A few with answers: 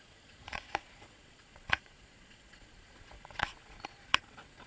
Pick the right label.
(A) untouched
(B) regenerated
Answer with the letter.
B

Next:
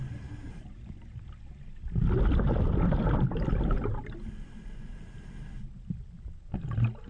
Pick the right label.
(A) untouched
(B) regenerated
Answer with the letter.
A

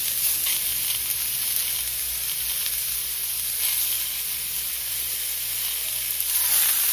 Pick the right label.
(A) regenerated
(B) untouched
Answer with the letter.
B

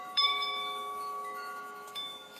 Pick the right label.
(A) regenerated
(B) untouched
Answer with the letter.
A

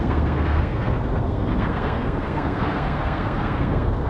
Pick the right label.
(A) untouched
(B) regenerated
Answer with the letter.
B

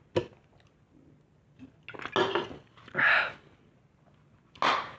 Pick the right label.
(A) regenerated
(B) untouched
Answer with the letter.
B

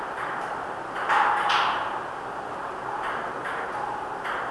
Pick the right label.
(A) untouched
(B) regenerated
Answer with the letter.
B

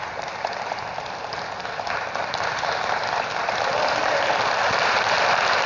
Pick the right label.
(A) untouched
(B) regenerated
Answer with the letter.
B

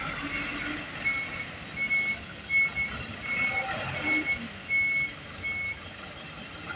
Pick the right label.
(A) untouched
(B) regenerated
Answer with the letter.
A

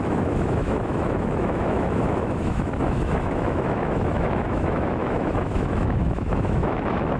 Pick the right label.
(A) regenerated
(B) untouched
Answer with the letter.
A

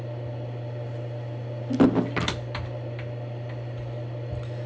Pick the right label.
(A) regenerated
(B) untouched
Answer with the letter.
B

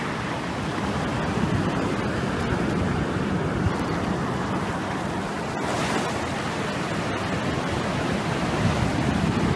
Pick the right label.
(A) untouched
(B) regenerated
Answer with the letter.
A